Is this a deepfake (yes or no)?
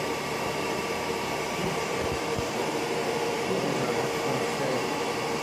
yes